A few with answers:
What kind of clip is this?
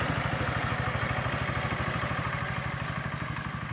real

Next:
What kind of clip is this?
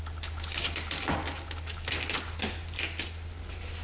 real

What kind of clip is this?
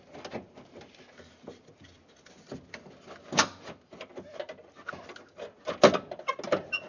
real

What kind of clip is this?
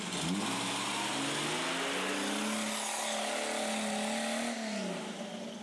real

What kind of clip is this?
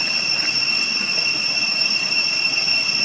real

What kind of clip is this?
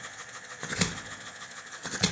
fake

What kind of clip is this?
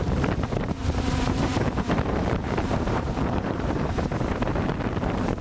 fake